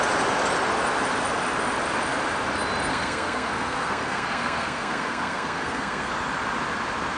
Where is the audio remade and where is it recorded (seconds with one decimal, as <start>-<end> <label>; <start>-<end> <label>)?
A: 0.0-2.9 recorded; 2.9-6.1 remade; 6.1-7.2 recorded